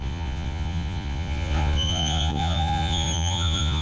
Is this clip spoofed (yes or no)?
yes